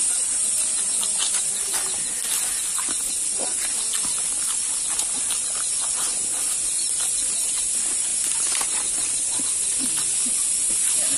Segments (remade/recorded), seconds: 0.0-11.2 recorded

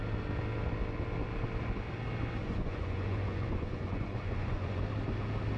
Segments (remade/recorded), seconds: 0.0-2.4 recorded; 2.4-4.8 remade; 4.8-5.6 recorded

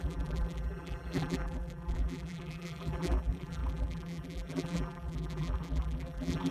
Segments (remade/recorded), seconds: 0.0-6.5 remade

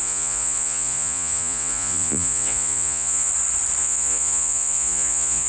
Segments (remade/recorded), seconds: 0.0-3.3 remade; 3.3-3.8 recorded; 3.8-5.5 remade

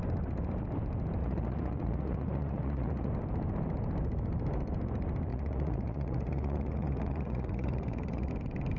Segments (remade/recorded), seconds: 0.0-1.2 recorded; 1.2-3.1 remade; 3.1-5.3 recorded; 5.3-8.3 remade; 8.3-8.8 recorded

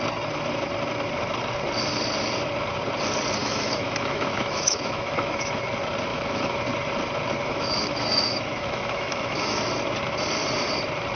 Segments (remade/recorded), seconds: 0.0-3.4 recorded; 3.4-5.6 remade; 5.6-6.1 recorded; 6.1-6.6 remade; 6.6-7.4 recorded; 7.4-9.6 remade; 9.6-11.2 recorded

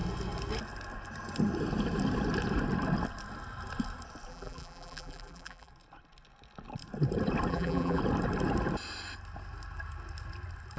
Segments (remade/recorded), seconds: 0.0-4.3 recorded; 4.3-5.7 remade; 5.7-7.5 recorded; 7.5-8.0 remade; 8.0-10.8 recorded